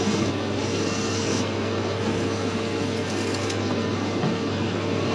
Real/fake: fake